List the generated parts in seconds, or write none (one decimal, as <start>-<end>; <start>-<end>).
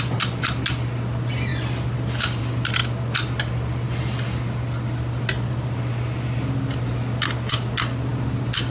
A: none